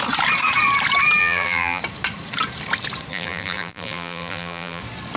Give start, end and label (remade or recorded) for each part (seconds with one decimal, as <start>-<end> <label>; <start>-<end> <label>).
0.0-1.2 recorded; 1.2-1.8 remade; 1.8-3.1 recorded; 3.1-4.8 remade; 4.8-5.2 recorded